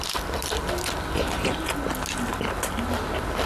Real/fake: real